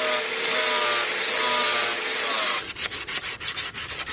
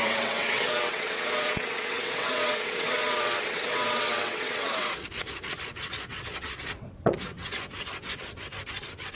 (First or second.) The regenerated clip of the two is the second